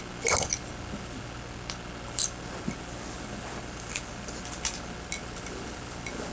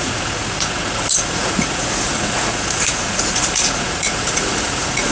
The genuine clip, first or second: first